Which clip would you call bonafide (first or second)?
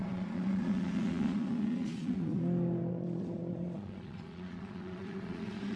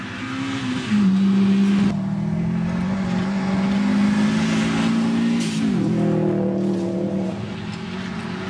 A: second